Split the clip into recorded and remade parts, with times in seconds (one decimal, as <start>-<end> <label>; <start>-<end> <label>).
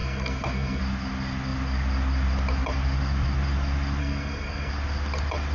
0.0-0.8 remade; 0.8-4.0 recorded; 4.0-4.7 remade; 4.7-5.5 recorded